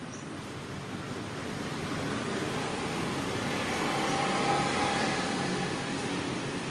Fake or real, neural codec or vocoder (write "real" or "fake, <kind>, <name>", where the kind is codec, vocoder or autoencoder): real